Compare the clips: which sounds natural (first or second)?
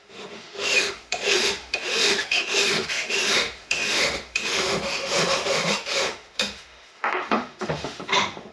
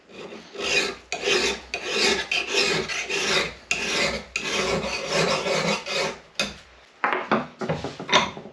second